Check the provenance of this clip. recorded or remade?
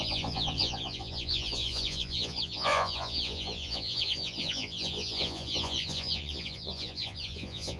remade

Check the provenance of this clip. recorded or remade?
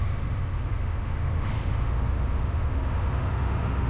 remade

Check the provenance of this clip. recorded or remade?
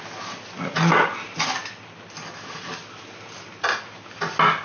recorded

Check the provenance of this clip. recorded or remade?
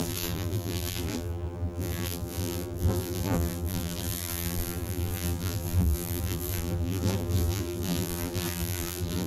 remade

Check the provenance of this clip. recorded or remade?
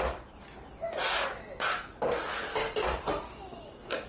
recorded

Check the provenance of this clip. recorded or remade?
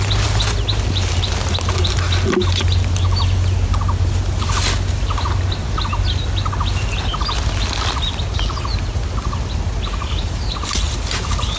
recorded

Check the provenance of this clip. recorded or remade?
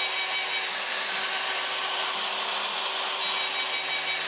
recorded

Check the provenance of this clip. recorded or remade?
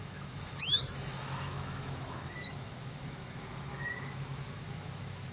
remade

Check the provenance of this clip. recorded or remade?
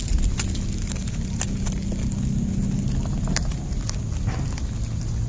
recorded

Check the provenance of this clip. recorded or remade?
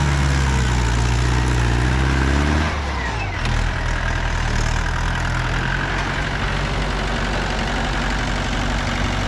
recorded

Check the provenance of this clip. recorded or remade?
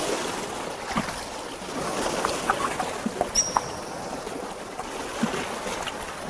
recorded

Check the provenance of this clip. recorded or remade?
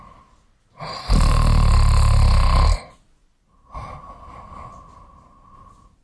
recorded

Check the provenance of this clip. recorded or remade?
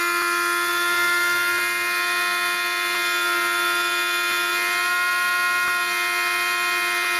recorded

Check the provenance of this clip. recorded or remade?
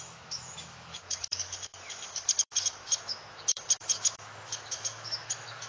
remade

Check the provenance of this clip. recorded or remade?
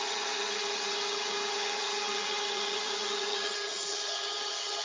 remade